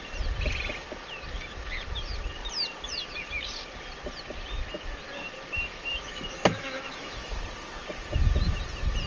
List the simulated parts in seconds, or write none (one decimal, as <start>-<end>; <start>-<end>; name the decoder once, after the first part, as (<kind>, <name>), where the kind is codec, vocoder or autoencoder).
5.7-7.4 (autoencoder, DAC-VAE)